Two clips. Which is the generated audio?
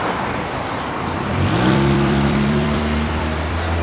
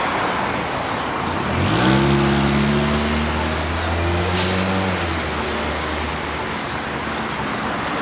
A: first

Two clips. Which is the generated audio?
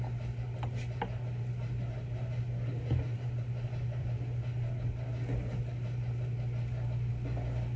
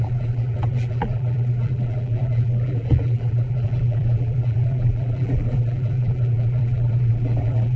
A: second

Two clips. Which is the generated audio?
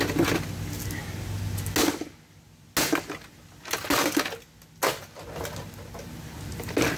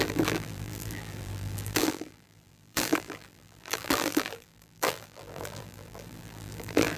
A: second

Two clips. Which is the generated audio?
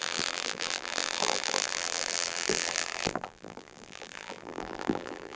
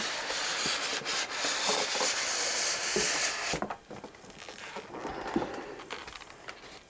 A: first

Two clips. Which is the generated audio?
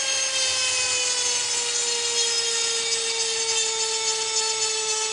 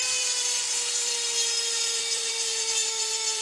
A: second